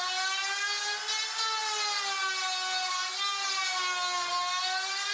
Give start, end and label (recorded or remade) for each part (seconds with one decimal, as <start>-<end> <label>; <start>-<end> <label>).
0.0-5.1 recorded